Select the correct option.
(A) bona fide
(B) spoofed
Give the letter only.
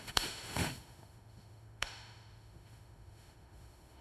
B